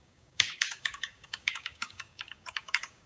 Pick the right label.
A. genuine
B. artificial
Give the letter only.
B